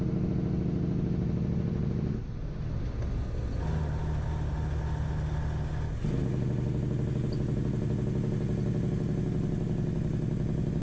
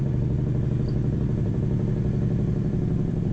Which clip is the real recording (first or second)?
first